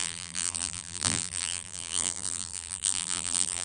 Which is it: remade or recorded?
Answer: remade